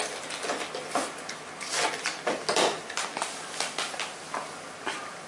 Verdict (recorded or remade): recorded